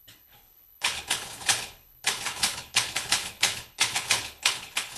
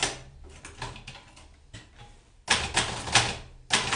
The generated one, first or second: first